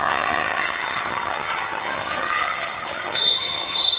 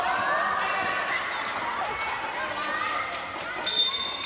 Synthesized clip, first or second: first